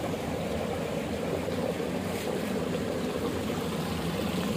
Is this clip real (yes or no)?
yes